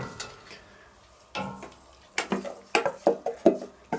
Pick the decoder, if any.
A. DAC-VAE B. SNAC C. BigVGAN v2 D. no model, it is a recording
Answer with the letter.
D